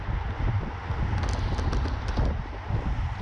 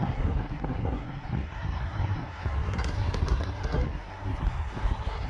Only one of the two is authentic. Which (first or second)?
first